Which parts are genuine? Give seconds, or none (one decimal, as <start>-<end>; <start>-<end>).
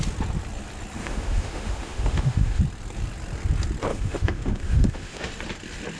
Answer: 0.0-1.0; 2.6-3.9; 5.3-6.0